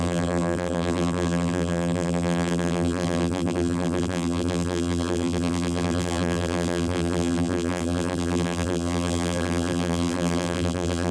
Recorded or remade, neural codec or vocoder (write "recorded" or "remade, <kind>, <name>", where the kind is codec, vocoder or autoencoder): remade, vocoder, BigVGAN v2